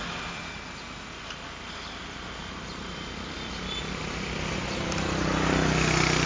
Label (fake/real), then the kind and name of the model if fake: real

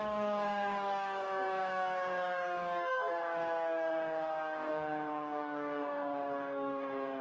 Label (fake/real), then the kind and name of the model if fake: fake, codec, DAC